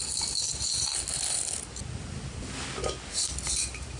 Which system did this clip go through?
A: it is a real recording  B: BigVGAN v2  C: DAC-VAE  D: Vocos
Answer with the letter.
A